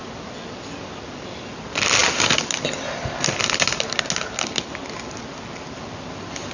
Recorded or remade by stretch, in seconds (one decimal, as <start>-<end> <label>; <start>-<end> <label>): 0.0-6.5 recorded